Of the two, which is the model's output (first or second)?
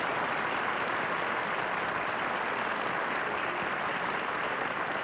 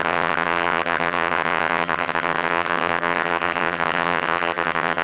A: second